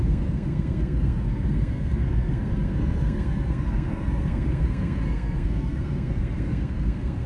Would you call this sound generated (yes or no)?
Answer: yes